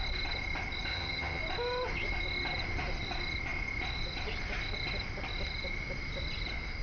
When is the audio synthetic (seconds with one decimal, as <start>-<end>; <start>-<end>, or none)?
0.9-1.4